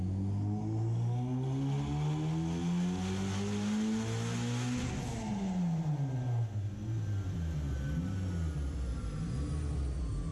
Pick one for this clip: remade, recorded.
recorded